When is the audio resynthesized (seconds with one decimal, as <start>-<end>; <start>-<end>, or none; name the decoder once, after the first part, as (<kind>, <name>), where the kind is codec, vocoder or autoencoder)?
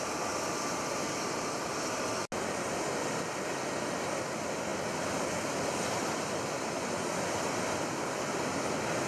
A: none